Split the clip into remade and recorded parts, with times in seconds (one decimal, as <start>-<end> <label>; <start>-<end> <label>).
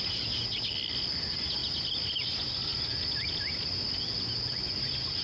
0.0-5.2 recorded